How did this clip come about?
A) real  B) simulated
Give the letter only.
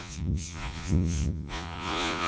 B